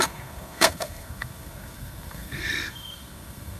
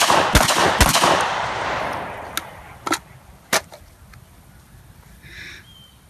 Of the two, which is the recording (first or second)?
second